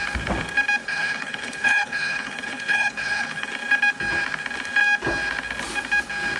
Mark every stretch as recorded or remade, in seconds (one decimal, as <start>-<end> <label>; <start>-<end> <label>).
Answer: 0.0-0.8 recorded; 0.8-3.5 remade; 3.5-6.4 recorded